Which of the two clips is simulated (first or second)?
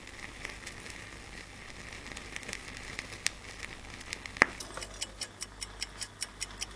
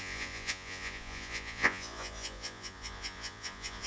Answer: second